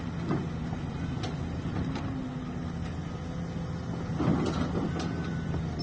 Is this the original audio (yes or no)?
yes